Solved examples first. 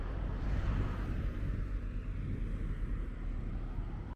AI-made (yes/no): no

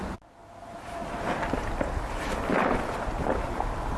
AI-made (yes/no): no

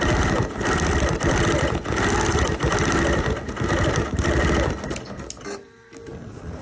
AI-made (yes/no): no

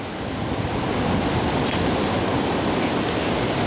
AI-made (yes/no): no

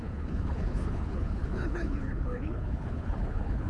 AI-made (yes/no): yes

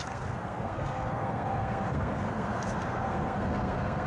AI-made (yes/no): yes